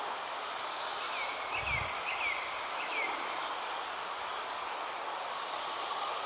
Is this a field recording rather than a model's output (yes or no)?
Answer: yes